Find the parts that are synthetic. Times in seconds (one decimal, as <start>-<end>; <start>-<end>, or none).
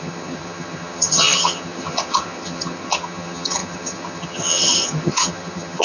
0.0-5.8